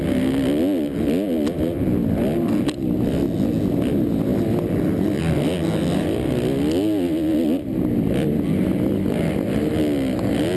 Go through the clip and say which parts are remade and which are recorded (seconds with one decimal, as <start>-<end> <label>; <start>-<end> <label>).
0.0-10.6 recorded